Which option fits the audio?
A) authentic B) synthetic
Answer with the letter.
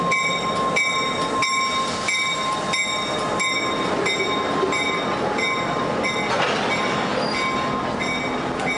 A